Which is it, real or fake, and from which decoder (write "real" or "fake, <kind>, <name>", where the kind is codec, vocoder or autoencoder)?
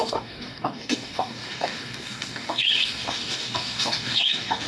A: fake, codec, DAC